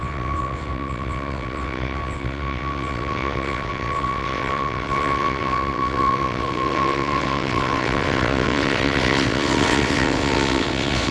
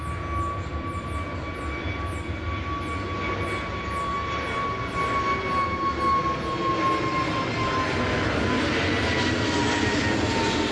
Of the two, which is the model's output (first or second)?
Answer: first